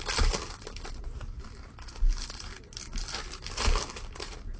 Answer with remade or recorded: recorded